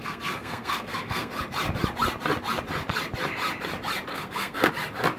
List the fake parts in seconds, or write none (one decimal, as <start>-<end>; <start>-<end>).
0.0-1.3; 4.1-4.7